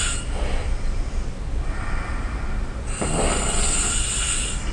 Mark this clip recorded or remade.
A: recorded